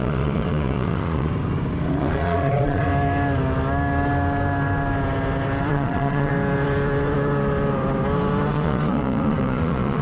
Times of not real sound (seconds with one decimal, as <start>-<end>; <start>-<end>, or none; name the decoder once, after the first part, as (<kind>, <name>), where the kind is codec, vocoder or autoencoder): 0.0-1.3 (vocoder, Vocos); 2.0-2.9; 5.7-6.3; 8.5-10.0